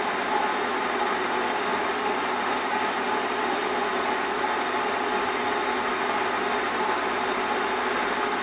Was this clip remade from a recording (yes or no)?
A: no